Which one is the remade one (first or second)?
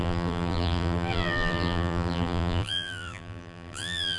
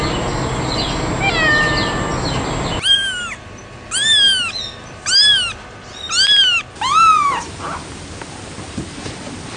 first